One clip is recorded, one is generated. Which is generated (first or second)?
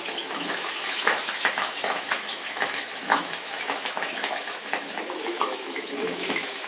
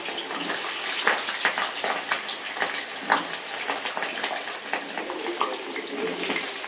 first